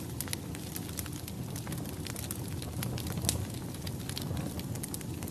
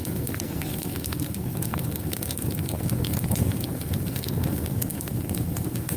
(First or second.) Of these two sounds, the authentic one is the first